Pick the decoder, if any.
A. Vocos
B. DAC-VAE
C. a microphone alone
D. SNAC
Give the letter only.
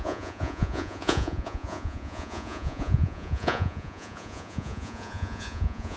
A